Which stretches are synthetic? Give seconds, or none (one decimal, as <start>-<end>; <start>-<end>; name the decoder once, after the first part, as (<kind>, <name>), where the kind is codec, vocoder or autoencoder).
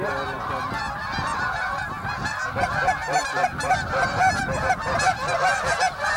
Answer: none